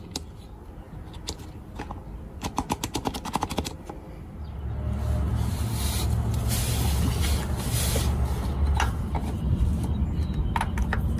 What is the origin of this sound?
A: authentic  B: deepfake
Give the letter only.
A